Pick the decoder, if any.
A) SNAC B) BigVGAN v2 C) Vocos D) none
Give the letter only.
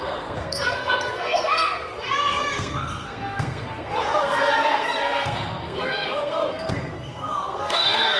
A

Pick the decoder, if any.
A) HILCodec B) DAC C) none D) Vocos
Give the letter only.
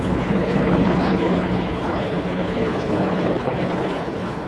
A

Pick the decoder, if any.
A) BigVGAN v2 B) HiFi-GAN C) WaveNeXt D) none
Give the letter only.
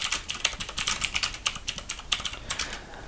D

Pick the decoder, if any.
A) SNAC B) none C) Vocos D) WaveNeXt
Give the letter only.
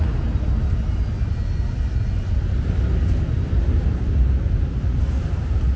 B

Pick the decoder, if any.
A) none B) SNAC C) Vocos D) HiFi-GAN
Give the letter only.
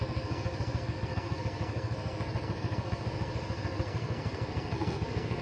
B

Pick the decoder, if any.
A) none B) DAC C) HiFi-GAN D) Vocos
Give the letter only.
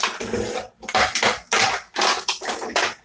A